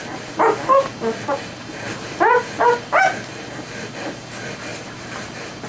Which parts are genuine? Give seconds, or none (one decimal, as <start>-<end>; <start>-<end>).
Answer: 0.0-4.7